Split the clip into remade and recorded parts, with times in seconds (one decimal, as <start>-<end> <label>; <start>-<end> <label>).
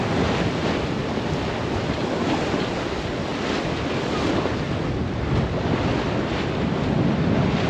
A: 0.0-7.7 recorded